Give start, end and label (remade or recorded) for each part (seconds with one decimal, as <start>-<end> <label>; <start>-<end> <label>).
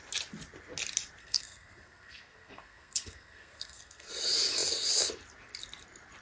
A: 0.0-1.2 recorded; 1.2-4.1 remade; 4.1-6.2 recorded